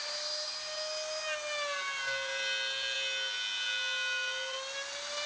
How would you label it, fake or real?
real